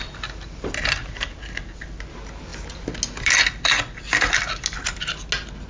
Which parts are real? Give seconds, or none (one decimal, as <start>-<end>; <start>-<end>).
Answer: 0.0-5.7